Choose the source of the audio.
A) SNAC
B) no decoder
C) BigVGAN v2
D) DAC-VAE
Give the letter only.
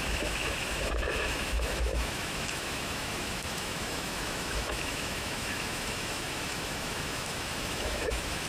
D